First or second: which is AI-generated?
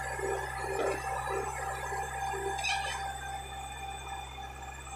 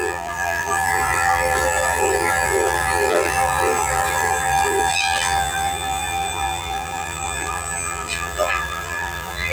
second